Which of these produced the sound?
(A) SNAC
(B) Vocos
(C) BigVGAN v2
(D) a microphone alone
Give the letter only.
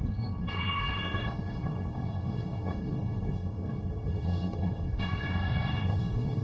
A